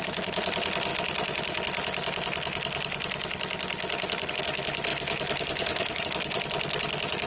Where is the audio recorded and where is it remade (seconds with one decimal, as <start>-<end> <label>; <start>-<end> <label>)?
0.0-4.9 recorded; 4.9-6.0 remade; 6.0-7.3 recorded